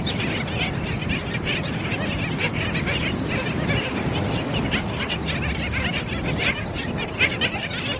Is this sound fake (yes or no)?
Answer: no